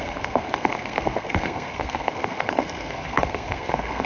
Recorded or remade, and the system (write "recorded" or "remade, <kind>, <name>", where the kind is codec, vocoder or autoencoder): remade, codec, SNAC